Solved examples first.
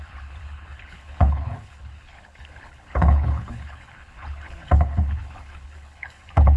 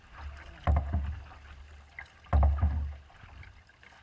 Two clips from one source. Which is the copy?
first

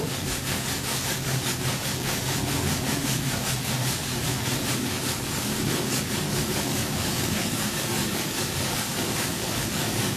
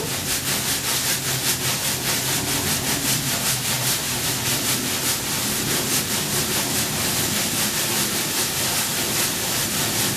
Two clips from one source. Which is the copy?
first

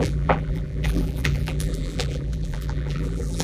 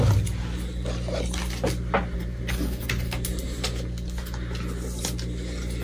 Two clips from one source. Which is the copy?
first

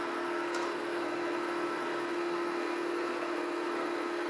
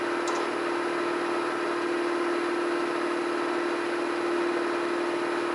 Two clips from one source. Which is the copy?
first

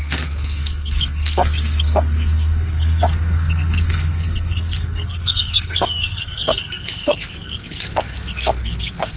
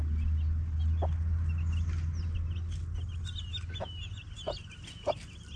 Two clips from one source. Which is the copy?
first